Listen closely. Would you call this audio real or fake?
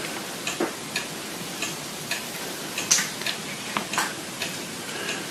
real